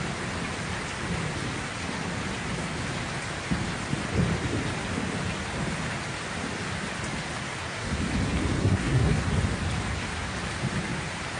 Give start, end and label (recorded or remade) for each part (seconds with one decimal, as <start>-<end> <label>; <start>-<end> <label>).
0.0-7.6 recorded; 7.6-8.1 remade; 8.1-8.6 recorded; 8.6-9.3 remade; 9.3-11.4 recorded